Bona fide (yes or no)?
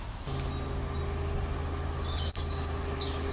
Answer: yes